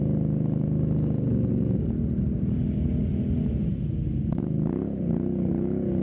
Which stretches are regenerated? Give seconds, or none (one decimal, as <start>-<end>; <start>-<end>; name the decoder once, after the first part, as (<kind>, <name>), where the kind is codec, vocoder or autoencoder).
none